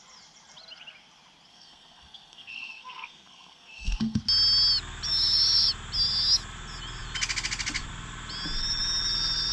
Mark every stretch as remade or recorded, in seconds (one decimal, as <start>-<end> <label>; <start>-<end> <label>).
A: 0.0-1.5 recorded; 1.5-4.2 remade; 4.2-9.5 recorded